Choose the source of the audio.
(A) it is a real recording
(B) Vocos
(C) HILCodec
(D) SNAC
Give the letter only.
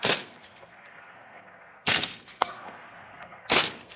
D